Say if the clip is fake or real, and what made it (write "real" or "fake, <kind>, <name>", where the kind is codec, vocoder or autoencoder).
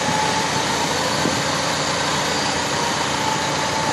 real